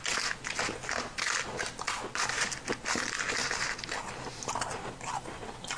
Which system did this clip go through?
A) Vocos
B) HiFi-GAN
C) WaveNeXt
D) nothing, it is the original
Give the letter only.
D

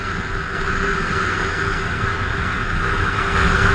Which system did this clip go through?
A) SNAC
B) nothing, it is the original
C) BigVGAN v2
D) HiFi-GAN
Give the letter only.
A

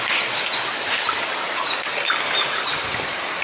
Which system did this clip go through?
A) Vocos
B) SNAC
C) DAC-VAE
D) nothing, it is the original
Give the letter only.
D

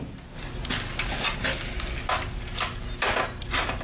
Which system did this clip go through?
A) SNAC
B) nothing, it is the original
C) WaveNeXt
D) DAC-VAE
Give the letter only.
B